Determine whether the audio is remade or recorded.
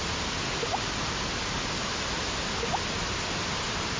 recorded